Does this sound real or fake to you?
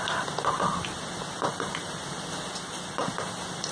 real